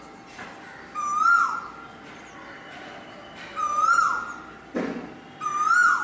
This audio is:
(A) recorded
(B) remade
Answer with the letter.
A